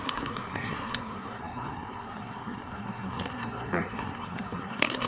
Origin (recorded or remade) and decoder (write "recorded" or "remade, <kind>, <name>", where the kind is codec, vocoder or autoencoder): remade, codec, SNAC